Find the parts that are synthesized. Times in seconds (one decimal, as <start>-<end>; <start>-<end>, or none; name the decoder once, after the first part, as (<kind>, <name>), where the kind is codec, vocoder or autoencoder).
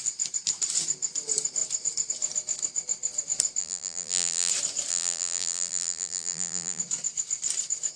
3.6-4.5 (vocoder, BigVGAN v2); 4.9-6.8